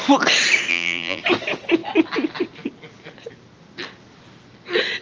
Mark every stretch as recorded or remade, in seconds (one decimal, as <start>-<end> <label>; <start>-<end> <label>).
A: 0.0-0.7 recorded; 0.7-1.2 remade; 1.2-5.0 recorded